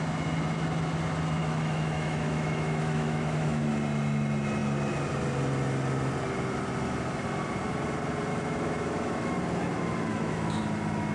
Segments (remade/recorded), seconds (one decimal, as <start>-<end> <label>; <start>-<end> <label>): 0.0-1.4 recorded; 1.4-3.6 remade; 3.6-8.3 recorded; 8.3-9.3 remade; 9.3-10.1 recorded; 10.1-10.6 remade; 10.6-11.1 recorded